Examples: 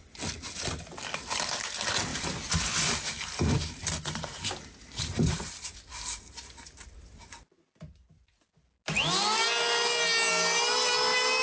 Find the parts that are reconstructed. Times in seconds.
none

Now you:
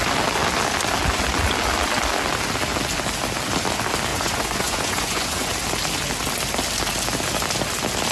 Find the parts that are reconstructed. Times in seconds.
4.1-5.5 (vocoder, Vocos)

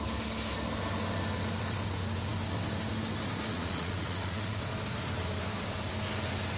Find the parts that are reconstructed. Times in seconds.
3.5-4.6 (vocoder, Vocos)